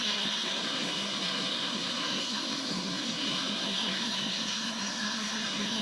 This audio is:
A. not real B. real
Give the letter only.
A